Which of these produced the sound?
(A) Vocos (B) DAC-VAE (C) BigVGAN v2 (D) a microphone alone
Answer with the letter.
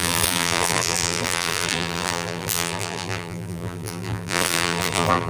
C